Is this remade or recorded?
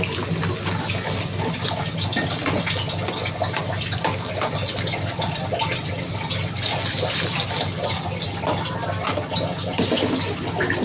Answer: recorded